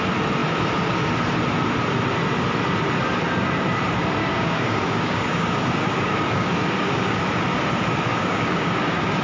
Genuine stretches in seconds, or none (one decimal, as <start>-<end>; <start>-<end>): 0.0-4.2; 7.2-8.1